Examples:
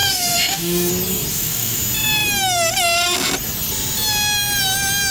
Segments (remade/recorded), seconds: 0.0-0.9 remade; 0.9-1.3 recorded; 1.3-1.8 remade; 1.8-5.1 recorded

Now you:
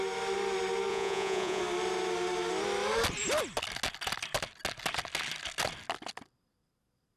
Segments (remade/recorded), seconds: 0.0-0.9 recorded; 0.9-1.6 remade; 1.6-7.2 recorded

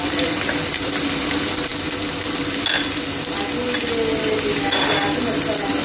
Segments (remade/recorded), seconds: 0.0-1.7 remade; 1.7-5.2 recorded; 5.2-5.8 remade

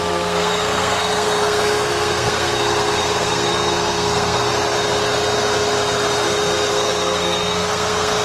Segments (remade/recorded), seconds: 0.0-4.5 remade; 4.5-6.7 recorded; 6.7-8.2 remade